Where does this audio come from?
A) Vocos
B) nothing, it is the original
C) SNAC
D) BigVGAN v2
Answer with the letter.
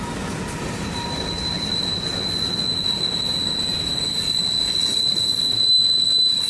B